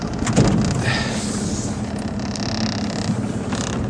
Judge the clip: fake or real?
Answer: real